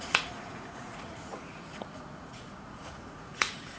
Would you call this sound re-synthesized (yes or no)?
yes